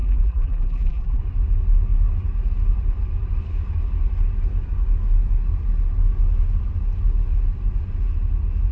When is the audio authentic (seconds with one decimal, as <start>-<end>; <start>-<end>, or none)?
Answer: 1.2-8.7